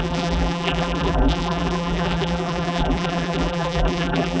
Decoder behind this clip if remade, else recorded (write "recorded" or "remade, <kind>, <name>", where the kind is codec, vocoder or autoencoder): remade, vocoder, BigVGAN v2